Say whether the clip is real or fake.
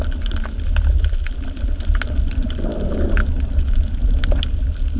real